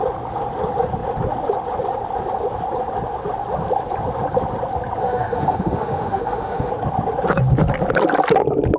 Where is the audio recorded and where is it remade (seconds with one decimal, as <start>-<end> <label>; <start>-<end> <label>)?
0.0-5.0 recorded; 5.0-6.7 remade; 6.7-8.8 recorded

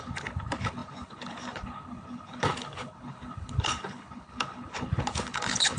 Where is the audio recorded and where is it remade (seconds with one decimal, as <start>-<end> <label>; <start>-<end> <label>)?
0.0-5.8 remade

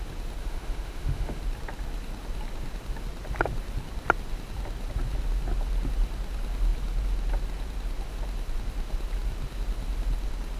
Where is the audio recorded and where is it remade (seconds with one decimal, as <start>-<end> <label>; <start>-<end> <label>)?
0.0-0.4 recorded; 0.4-1.4 remade; 1.4-10.6 recorded

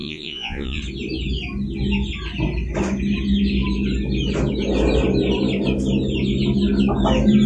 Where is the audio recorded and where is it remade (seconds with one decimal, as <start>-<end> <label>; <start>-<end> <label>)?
0.0-0.8 remade; 0.8-7.5 recorded

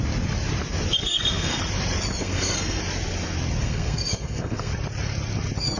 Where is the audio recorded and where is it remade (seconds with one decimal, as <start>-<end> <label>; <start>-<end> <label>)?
0.0-1.0 recorded; 1.0-1.6 remade; 1.6-2.2 recorded; 2.2-2.8 remade; 2.8-3.6 recorded; 3.6-4.7 remade; 4.7-5.8 recorded

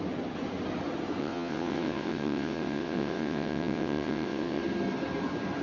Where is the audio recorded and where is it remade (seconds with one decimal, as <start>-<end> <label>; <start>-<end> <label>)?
0.0-1.2 recorded; 1.2-4.6 remade; 4.6-5.6 recorded